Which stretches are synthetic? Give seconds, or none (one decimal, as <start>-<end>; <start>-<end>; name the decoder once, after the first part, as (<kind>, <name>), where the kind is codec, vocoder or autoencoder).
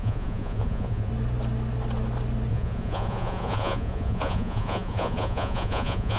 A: 0.0-1.1 (vocoder, Vocos); 2.5-6.2